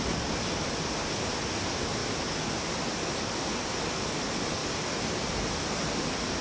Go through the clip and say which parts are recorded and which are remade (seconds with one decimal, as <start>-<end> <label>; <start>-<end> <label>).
0.0-6.4 recorded